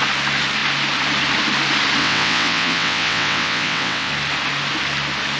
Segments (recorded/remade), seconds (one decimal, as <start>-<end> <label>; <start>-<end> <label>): 0.0-2.0 recorded; 2.0-4.1 remade; 4.1-5.4 recorded